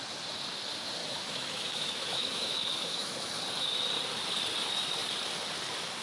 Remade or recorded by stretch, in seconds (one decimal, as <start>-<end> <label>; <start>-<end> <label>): 0.0-1.0 recorded; 1.0-3.3 remade; 3.3-6.0 recorded